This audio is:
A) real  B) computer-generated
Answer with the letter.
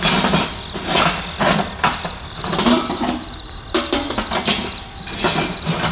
A